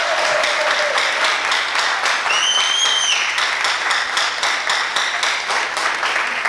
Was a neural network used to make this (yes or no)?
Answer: no